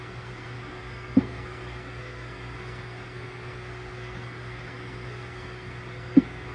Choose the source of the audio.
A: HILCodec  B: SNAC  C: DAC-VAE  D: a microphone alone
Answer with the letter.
B